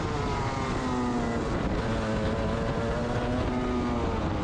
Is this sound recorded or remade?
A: recorded